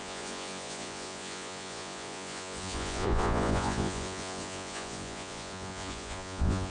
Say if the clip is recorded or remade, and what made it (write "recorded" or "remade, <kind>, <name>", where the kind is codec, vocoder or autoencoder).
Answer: remade, vocoder, Vocos